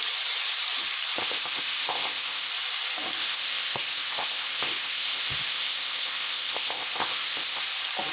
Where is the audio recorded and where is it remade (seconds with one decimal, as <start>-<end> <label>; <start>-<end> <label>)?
0.0-1.2 recorded; 1.2-2.5 remade; 2.5-3.2 recorded; 3.2-7.6 remade; 7.6-8.1 recorded